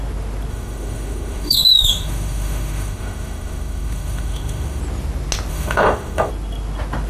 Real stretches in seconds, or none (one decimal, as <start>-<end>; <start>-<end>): 0.0-0.5; 4.8-5.5; 6.3-7.1